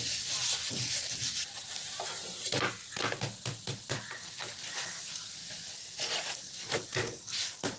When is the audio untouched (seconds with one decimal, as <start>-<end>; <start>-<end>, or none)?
0.0-7.8